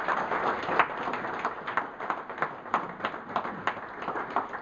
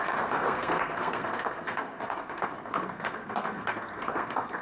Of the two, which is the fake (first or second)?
second